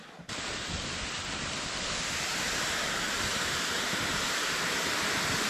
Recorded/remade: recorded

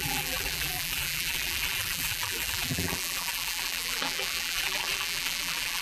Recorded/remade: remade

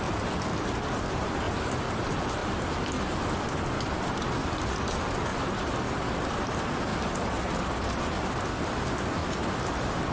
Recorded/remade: recorded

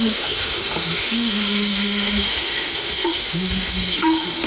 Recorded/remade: remade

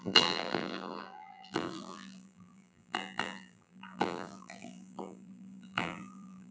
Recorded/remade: remade